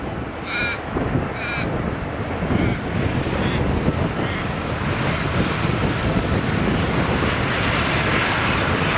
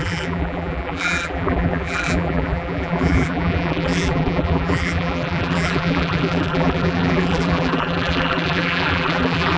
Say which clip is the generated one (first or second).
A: second